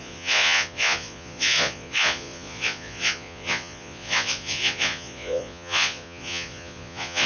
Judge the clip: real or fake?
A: fake